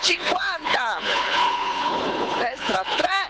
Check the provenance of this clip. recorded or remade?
remade